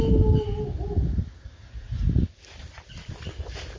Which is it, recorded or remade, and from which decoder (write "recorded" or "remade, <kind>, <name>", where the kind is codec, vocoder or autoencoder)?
recorded